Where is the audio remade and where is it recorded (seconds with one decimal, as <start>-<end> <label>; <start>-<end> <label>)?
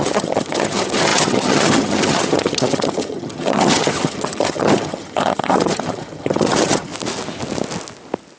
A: 0.0-6.9 remade; 6.9-8.4 recorded